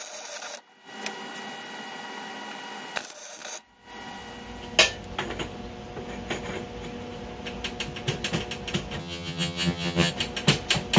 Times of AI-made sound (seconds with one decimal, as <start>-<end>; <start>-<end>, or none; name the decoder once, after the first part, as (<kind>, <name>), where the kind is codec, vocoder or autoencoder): 9.0-10.1 (vocoder, HiFi-GAN)